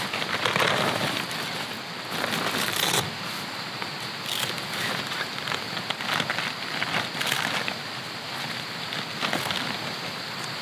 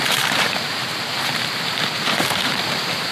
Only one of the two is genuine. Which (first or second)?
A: first